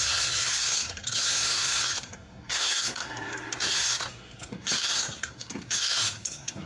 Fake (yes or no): yes